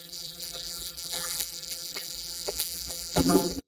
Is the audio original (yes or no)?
no